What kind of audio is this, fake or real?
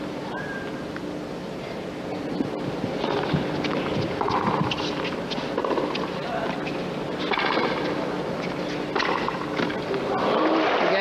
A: real